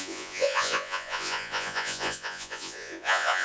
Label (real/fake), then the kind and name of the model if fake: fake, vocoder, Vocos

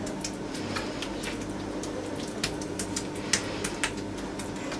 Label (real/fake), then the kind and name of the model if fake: real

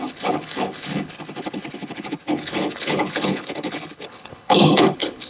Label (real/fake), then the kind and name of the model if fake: fake, codec, HILCodec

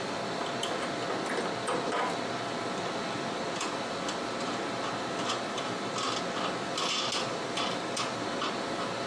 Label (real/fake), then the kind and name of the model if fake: real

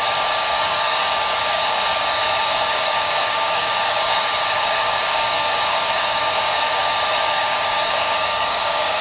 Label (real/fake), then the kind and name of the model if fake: fake, codec, DAC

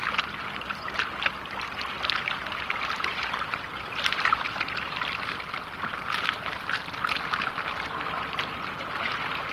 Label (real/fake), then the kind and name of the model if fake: real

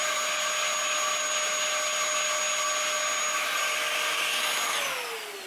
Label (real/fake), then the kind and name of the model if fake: real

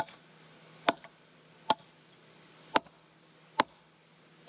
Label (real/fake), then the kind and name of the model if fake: real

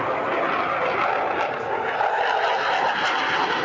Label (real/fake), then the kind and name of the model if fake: real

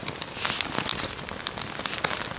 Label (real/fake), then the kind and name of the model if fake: real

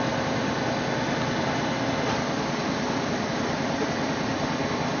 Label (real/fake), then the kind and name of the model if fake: real